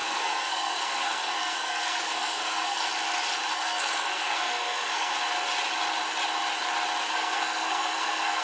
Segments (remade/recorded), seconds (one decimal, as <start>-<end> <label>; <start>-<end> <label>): 0.0-2.9 remade; 2.9-3.5 recorded; 3.5-5.1 remade; 5.1-7.1 recorded; 7.1-8.4 remade